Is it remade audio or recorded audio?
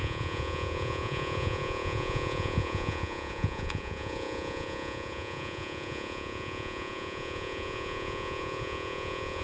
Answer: remade